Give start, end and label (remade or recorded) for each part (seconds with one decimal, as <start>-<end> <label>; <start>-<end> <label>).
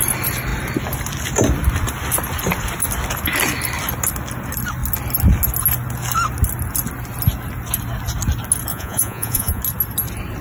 0.0-8.7 recorded; 8.7-9.6 remade; 9.6-10.4 recorded